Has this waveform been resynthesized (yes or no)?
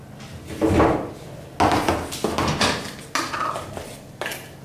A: no